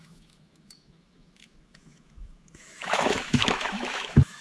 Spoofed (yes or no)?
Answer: yes